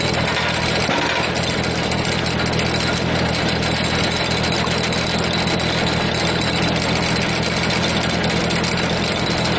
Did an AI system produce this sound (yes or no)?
no